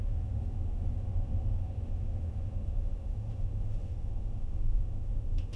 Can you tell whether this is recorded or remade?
remade